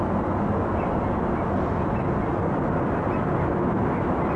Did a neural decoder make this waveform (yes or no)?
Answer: no